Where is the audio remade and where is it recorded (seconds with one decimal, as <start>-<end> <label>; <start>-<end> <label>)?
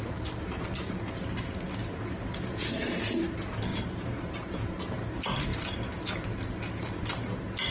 0.0-1.8 recorded; 1.8-2.5 remade; 2.5-3.7 recorded; 3.7-4.3 remade; 4.3-5.5 recorded; 5.5-6.1 remade; 6.1-7.7 recorded